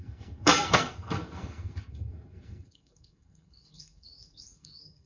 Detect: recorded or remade remade